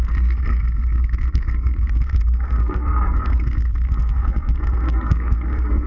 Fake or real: fake